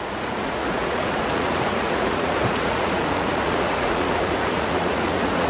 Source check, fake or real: fake